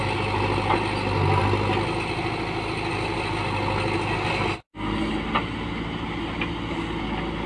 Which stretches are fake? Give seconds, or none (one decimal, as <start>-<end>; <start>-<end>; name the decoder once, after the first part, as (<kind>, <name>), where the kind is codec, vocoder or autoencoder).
none